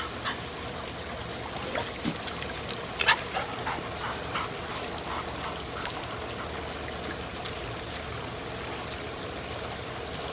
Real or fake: real